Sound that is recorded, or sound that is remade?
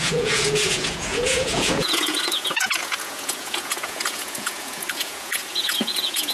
remade